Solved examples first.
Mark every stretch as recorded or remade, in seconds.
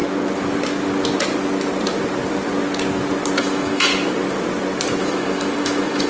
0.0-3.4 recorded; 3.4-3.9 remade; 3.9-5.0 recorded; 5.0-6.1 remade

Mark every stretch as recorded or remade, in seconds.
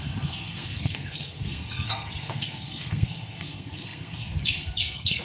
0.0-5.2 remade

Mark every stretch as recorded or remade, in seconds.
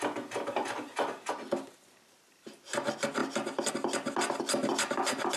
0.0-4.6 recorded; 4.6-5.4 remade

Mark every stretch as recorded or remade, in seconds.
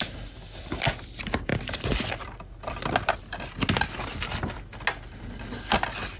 0.0-6.2 recorded